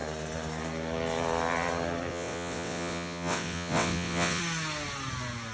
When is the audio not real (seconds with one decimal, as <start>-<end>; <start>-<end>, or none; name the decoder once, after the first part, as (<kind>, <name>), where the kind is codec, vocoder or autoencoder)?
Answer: 2.1-4.4 (vocoder, WaveNeXt)